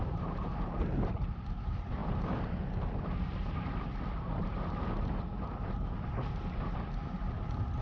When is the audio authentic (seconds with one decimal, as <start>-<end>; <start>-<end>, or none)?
0.0-7.8

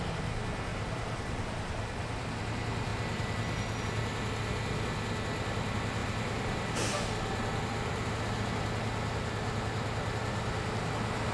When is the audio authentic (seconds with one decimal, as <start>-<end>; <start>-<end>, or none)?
0.0-0.7; 2.4-6.0; 6.9-11.3

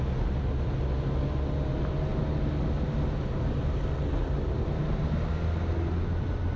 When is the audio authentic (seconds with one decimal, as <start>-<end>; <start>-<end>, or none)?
0.0-6.6

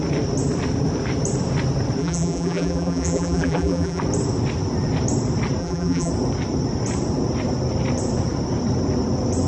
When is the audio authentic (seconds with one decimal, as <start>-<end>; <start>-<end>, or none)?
0.0-2.0; 4.0-5.6; 6.1-9.5